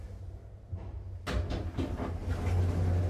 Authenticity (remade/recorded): recorded